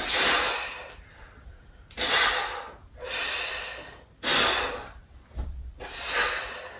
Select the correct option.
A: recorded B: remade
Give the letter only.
A